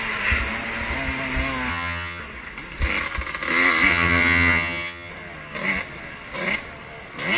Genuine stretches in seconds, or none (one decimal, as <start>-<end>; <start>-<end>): 0.0-1.7; 2.2-3.9; 5.1-7.4